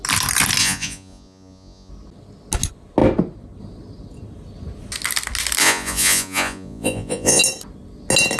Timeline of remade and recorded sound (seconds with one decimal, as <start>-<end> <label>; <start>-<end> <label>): 0.0-0.6 recorded; 0.6-1.9 remade; 1.9-5.6 recorded; 5.6-7.4 remade; 7.4-8.4 recorded